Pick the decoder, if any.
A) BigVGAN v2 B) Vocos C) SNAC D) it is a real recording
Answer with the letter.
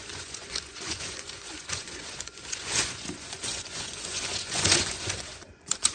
B